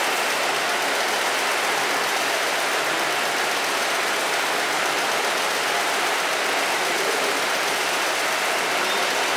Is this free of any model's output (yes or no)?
yes